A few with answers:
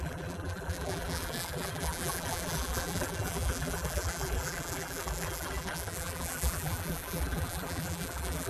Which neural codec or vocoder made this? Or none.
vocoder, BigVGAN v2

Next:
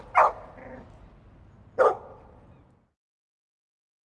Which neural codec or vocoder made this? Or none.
none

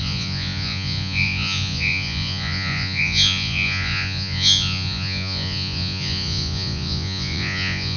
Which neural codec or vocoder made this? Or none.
vocoder, Vocos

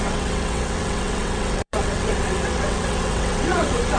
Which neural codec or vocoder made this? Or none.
vocoder, WaveNeXt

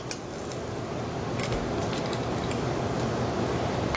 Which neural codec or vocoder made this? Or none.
none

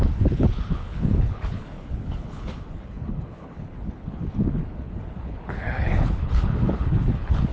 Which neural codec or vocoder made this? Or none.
codec, HILCodec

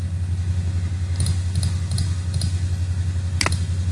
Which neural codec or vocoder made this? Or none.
none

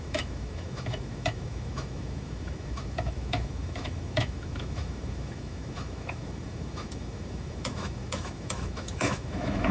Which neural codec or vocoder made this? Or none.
autoencoder, DAC-VAE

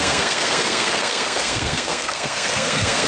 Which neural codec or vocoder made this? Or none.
codec, SNAC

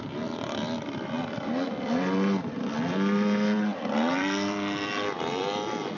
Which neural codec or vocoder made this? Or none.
vocoder, BigVGAN v2